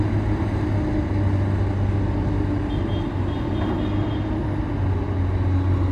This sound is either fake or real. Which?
real